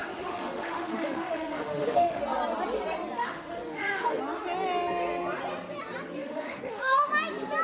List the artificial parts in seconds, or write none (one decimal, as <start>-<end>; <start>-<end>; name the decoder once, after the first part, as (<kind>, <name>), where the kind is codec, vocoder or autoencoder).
0.0-2.2 (autoencoder, DAC-VAE); 3.2-4.2; 6.2-7.1